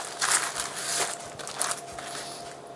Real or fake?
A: real